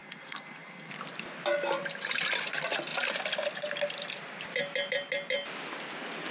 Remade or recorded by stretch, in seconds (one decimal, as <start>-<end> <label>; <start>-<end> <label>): 0.0-0.9 remade; 0.9-6.3 recorded